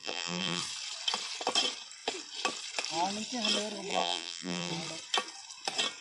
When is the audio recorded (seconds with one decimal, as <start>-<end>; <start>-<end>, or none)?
0.6-3.9; 4.7-6.0